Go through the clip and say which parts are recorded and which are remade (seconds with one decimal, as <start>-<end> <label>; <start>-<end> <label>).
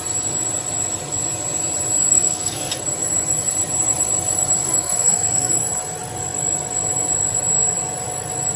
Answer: 0.0-2.1 recorded; 2.1-2.7 remade; 2.7-4.7 recorded; 4.7-5.6 remade; 5.6-8.6 recorded